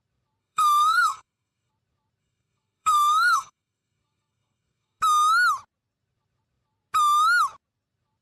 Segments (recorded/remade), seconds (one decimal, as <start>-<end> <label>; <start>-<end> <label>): 0.0-0.4 recorded; 0.4-1.7 remade; 1.7-2.2 recorded; 2.2-5.0 remade; 5.0-8.2 recorded